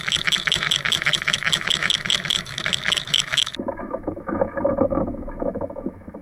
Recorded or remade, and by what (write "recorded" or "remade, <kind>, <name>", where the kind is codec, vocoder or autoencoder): remade, autoencoder, DAC-VAE